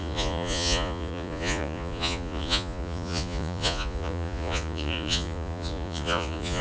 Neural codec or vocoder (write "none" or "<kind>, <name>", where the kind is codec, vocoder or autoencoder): vocoder, Vocos